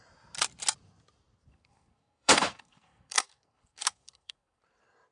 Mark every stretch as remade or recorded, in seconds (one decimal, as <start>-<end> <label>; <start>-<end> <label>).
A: 0.0-1.5 recorded; 1.5-4.6 remade; 4.6-5.1 recorded